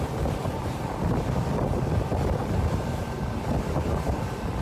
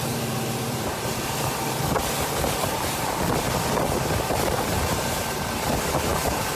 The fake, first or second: second